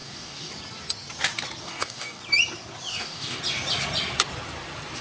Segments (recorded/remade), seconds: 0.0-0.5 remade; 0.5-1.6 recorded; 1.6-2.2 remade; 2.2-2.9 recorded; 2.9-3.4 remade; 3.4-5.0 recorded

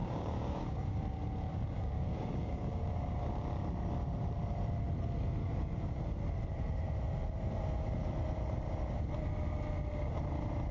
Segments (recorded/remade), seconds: 0.0-1.0 remade; 1.0-1.5 recorded; 1.5-3.3 remade; 3.3-5.4 recorded; 5.4-6.0 remade; 6.0-10.7 recorded